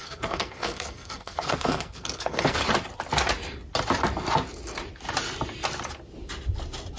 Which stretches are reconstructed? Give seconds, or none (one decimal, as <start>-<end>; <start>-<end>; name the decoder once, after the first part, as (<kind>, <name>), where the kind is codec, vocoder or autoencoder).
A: 0.0-2.6 (codec, SNAC)